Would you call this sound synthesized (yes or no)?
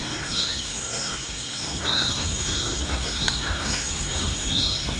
yes